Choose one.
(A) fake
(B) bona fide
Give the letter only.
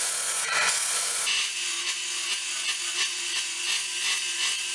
A